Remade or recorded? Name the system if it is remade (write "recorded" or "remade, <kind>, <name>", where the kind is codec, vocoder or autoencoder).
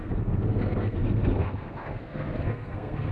remade, codec, SNAC